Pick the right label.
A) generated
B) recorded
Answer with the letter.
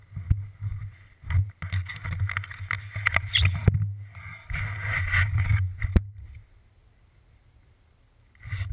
B